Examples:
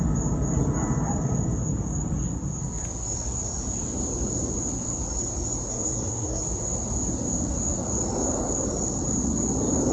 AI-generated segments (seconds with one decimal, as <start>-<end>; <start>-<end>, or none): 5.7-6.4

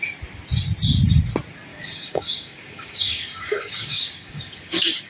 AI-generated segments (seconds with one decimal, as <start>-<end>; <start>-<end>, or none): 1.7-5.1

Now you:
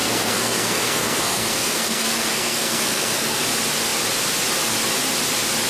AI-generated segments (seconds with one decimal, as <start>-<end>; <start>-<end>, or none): 0.0-3.4